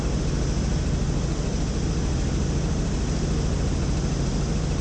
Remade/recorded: recorded